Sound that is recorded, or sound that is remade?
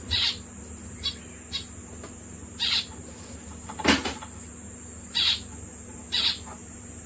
recorded